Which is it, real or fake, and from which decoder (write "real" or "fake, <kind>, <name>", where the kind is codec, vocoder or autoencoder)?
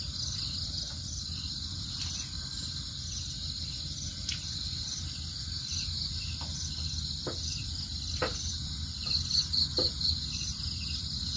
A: real